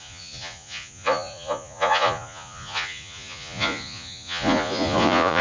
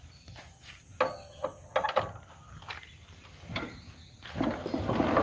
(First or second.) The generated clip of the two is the first